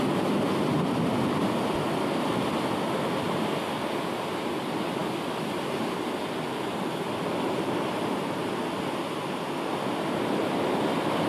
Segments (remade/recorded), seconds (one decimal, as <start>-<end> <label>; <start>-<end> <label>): 0.0-11.3 recorded